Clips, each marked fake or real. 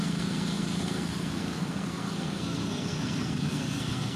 fake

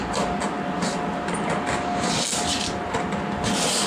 real